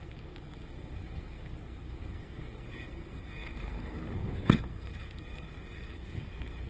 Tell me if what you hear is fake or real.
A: fake